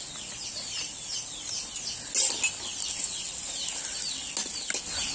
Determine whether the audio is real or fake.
real